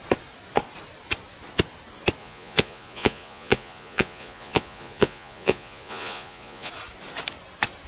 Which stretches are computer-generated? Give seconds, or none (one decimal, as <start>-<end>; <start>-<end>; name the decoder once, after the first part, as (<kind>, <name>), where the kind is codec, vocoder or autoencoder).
2.2-6.7 (vocoder, Vocos)